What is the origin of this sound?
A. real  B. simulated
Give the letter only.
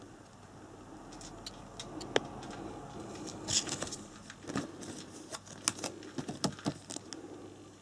A